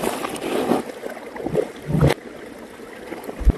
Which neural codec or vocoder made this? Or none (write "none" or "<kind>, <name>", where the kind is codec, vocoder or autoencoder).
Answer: none